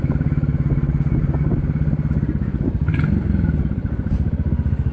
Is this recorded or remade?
recorded